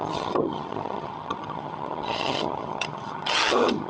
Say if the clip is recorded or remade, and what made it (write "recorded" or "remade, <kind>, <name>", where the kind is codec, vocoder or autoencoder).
remade, vocoder, HiFi-GAN